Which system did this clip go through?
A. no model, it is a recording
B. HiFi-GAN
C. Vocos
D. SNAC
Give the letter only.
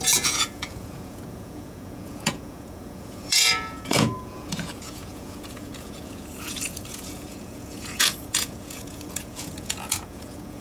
C